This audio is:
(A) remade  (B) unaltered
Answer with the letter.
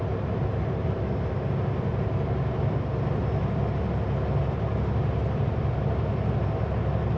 B